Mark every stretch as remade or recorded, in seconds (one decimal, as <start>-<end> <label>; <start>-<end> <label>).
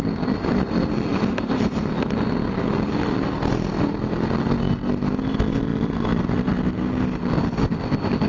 0.0-5.7 recorded; 5.7-6.5 remade; 6.5-8.3 recorded